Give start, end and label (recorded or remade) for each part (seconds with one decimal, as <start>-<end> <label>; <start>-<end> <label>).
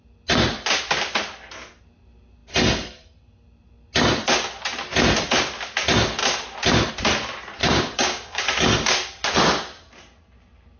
0.0-7.6 recorded; 7.6-8.4 remade; 8.4-10.8 recorded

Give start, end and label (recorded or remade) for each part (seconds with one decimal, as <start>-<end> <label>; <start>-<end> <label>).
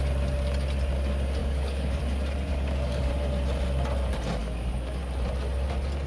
0.0-1.4 recorded; 1.4-2.0 remade; 2.0-2.5 recorded; 2.5-3.1 remade; 3.1-4.4 recorded; 4.4-5.0 remade; 5.0-6.1 recorded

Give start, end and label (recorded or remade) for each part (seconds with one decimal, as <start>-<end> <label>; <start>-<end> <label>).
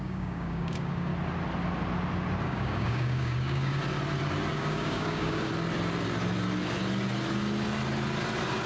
0.0-1.1 remade; 1.1-2.4 recorded; 2.4-3.8 remade; 3.8-4.5 recorded; 4.5-5.5 remade; 5.5-8.7 recorded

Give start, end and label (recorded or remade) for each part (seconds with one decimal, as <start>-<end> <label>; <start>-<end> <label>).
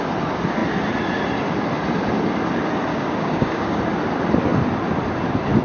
0.0-2.9 recorded; 2.9-3.8 remade; 3.8-5.6 recorded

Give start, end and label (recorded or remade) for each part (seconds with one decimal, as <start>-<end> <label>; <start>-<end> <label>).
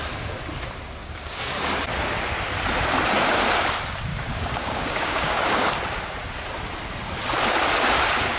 0.0-1.0 recorded; 1.0-1.7 remade; 1.7-4.1 recorded; 4.1-5.7 remade; 5.7-8.4 recorded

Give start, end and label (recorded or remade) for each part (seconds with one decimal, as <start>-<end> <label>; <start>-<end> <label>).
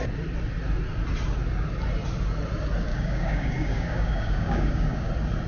0.0-2.9 recorded; 2.9-5.1 remade; 5.1-5.5 recorded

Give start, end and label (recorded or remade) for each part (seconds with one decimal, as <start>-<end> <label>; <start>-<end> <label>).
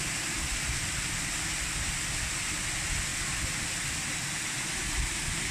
0.0-5.5 recorded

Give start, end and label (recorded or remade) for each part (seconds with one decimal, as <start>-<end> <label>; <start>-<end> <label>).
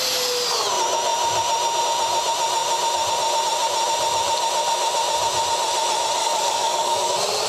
0.0-6.2 recorded; 6.2-7.1 remade; 7.1-7.5 recorded